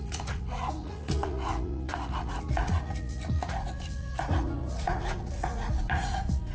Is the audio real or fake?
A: fake